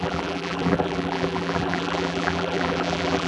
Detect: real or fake fake